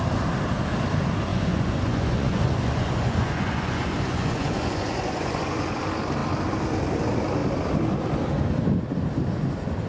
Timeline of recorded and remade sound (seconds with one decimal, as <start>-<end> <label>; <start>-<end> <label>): 0.0-1.3 recorded; 1.3-5.8 remade; 5.8-9.9 recorded